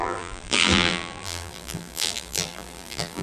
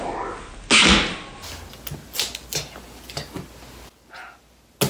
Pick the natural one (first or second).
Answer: second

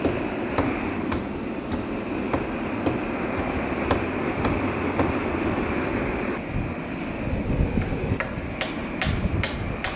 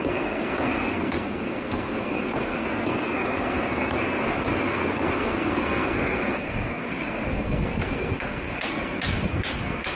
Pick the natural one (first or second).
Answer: first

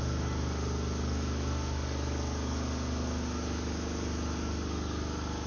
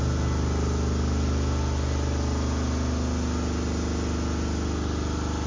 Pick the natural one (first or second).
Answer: second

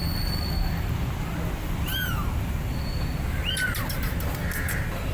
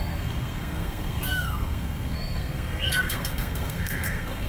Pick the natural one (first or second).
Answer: first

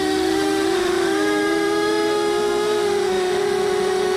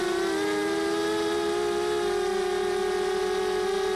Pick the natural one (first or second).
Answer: second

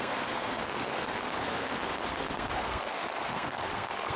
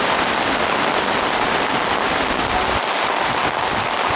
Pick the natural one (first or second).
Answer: second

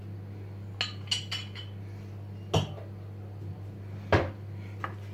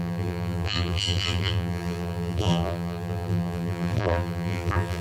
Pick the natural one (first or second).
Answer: first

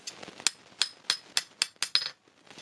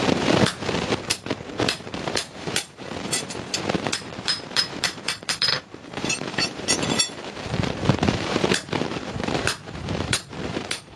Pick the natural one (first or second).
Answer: first